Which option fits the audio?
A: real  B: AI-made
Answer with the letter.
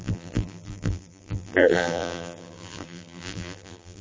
B